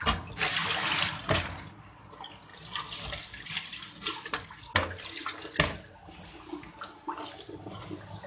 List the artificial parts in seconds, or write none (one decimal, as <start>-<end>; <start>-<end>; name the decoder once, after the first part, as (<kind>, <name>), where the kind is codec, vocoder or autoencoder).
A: none